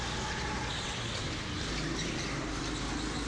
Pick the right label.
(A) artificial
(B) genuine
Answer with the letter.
B